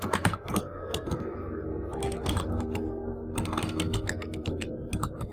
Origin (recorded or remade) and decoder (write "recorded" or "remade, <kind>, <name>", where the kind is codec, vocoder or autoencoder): remade, codec, SNAC